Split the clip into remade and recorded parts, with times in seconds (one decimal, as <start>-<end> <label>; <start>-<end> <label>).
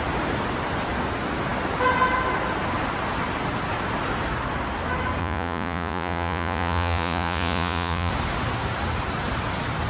0.0-5.2 recorded; 5.2-8.1 remade; 8.1-9.9 recorded